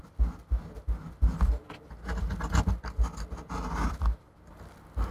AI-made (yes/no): no